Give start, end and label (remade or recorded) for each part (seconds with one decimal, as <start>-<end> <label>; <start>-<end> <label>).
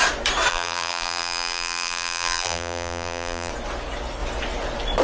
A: 0.0-0.5 recorded; 0.5-3.5 remade; 3.5-5.0 recorded